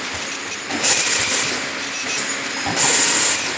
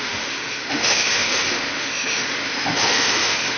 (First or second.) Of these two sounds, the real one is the first